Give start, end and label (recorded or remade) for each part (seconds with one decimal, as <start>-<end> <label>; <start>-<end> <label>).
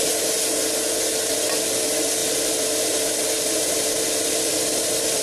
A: 0.0-2.2 recorded; 2.2-5.2 remade